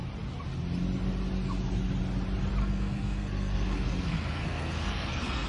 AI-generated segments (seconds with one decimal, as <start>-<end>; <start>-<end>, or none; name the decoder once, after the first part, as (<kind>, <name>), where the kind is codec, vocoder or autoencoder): 2.6-5.5 (codec, SNAC)

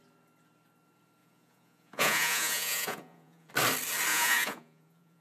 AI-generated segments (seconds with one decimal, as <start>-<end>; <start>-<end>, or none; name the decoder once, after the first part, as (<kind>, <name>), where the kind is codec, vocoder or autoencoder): 1.2-3.5 (vocoder, Vocos); 4.1-5.2

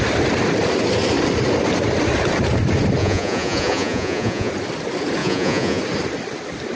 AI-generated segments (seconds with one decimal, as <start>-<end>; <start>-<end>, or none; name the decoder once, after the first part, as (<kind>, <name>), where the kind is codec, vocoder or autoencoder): 3.0-4.5 (vocoder, Vocos); 5.2-5.8

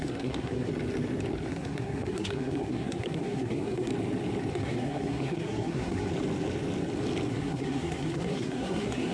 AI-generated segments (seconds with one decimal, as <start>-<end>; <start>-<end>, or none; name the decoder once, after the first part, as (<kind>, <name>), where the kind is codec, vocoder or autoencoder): 0.0-0.7 (codec, SNAC); 1.5-3.9; 4.5-6.1; 7.3-9.1

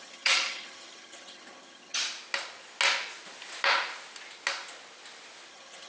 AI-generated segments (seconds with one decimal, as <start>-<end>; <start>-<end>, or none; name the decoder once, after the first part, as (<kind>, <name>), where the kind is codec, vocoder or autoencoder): 0.0-2.0 (vocoder, HiFi-GAN); 5.5-5.9

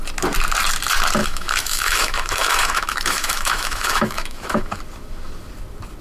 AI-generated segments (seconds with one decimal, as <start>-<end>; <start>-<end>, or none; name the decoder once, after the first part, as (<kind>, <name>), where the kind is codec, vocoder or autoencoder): 1.2-4.8 (autoencoder, DAC-VAE)